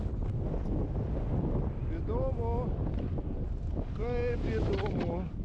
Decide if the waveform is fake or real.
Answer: real